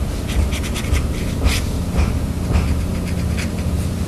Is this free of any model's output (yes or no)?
yes